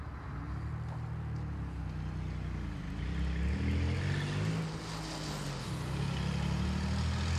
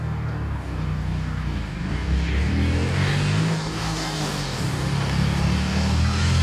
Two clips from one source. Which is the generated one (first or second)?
second